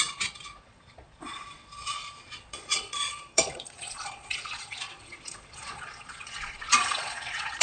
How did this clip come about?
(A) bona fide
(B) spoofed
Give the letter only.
B